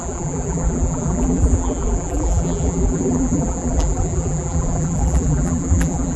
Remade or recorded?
remade